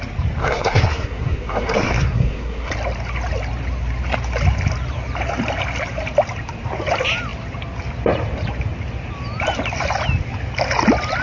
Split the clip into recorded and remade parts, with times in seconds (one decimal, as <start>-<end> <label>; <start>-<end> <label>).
0.0-0.4 recorded; 0.4-2.7 remade; 2.7-11.2 recorded